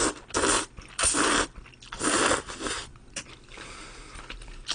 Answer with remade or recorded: recorded